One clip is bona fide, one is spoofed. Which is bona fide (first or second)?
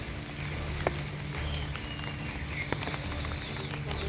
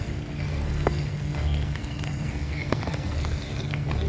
first